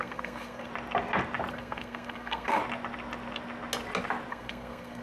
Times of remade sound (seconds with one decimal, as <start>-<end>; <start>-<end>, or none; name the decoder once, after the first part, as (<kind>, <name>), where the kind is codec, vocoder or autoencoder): 0.0-0.7 (codec, SNAC); 1.5-2.6; 4.3-5.0